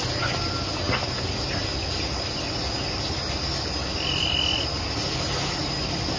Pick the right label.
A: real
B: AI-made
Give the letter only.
A